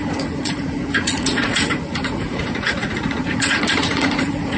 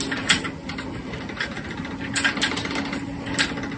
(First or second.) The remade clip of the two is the first